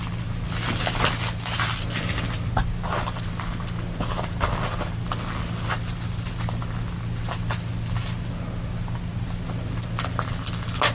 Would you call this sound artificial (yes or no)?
no